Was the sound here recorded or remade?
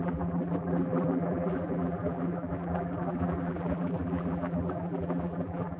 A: remade